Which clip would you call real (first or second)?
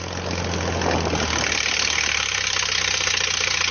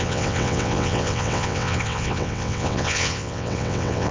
first